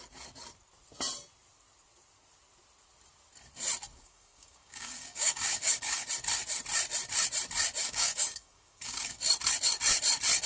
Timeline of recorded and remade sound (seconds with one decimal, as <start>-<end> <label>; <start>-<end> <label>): 0.0-3.9 recorded; 3.9-6.1 remade; 6.1-7.8 recorded; 7.8-9.2 remade; 9.2-10.5 recorded